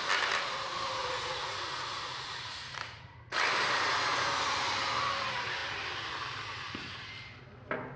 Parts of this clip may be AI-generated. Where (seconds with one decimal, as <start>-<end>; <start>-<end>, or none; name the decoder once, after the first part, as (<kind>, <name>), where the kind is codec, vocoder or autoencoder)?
1.0-3.4 (vocoder, Vocos)